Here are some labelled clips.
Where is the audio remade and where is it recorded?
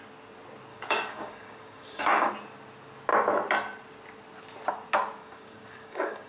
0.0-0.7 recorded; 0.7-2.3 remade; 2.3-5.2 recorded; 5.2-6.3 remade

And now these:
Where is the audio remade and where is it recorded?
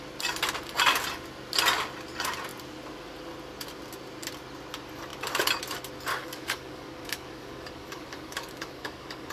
0.0-6.1 recorded; 6.1-9.3 remade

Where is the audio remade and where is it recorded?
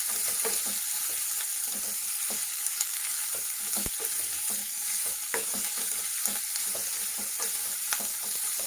0.0-2.5 recorded; 2.5-3.9 remade; 3.9-4.6 recorded; 4.6-6.0 remade; 6.0-7.6 recorded; 7.6-8.7 remade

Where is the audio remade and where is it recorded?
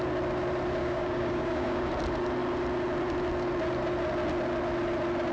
0.0-0.8 recorded; 0.8-1.9 remade; 1.9-5.3 recorded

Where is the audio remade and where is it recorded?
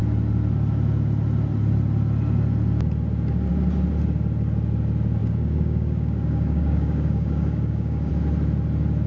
0.0-5.2 recorded; 5.2-8.1 remade; 8.1-9.1 recorded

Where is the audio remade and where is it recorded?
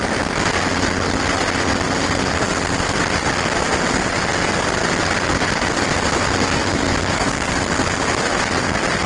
0.0-7.0 recorded; 7.0-7.5 remade; 7.5-9.1 recorded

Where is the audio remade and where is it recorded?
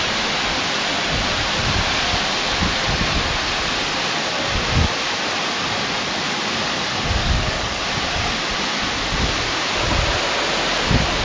0.0-7.2 recorded; 7.2-7.8 remade; 7.8-11.2 recorded